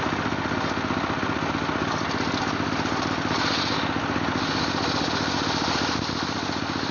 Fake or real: real